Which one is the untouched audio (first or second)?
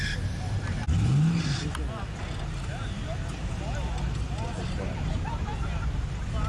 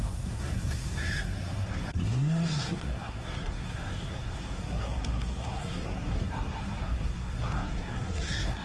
first